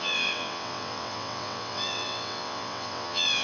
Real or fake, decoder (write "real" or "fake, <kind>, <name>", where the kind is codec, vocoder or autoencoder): fake, vocoder, WaveNeXt